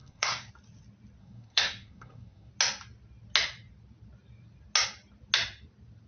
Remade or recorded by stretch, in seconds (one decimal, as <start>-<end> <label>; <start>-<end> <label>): 0.0-0.5 remade; 0.5-1.2 recorded; 1.2-2.5 remade; 2.5-6.1 recorded